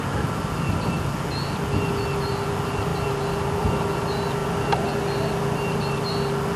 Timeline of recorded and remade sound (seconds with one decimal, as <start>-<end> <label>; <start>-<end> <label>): 0.0-6.6 recorded